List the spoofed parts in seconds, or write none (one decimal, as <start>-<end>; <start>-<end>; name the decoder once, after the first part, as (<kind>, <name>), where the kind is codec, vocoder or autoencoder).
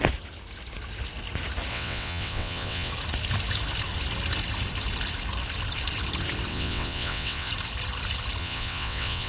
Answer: 1.7-2.9 (vocoder, WaveNeXt); 6.5-7.5; 8.4-9.3